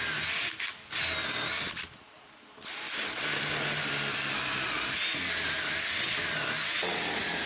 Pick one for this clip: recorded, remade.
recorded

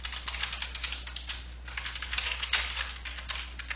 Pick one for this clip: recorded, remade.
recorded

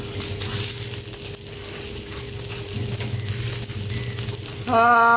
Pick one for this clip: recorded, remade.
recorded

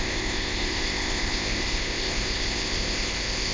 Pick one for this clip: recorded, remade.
remade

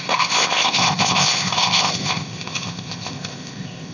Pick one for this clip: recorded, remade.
remade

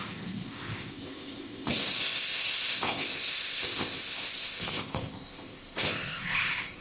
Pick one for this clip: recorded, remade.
remade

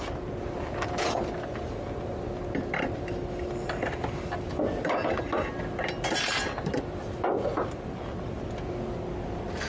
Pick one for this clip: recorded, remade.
recorded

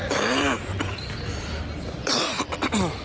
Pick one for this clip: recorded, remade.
recorded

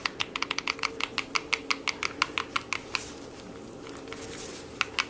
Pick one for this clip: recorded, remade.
recorded